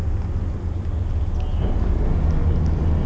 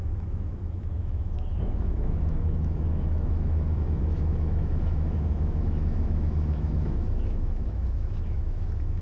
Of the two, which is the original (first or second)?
first